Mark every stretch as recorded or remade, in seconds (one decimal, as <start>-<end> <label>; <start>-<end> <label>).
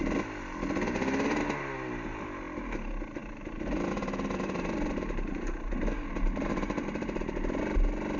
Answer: 0.0-3.2 recorded; 3.2-7.6 remade; 7.6-8.2 recorded